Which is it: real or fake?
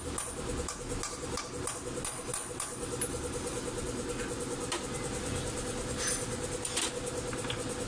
real